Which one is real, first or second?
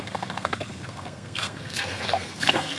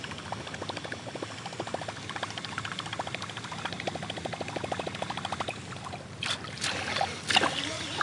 second